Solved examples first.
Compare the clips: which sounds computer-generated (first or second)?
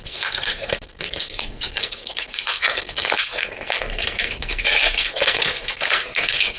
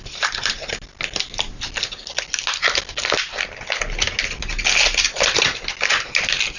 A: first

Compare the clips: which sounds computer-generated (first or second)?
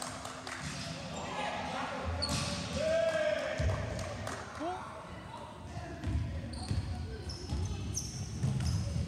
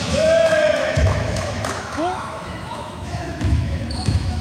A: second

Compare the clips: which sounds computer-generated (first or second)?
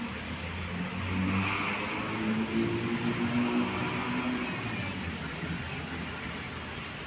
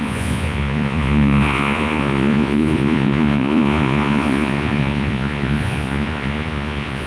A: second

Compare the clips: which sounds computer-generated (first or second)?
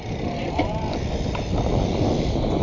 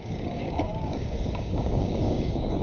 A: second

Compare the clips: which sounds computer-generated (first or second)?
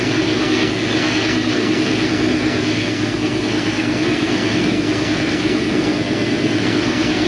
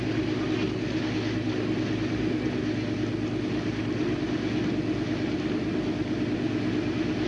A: first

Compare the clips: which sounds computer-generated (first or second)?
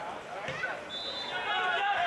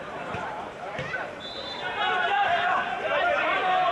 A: second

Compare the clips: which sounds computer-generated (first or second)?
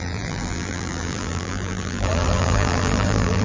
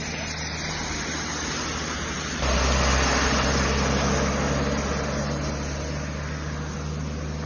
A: first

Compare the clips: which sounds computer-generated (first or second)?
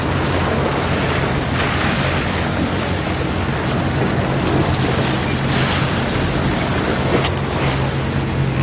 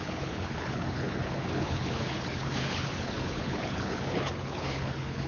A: second